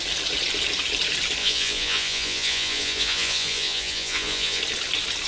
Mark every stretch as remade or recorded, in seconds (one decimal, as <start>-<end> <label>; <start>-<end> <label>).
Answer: 0.0-1.4 recorded; 1.4-4.6 remade; 4.6-5.3 recorded